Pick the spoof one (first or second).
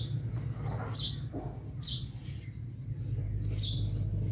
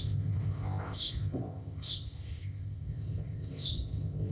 second